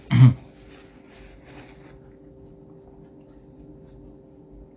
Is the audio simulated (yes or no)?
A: no